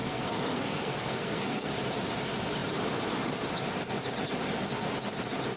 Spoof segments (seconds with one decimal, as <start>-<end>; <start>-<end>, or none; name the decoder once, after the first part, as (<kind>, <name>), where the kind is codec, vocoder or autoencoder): 0.0-1.7 (codec, SNAC)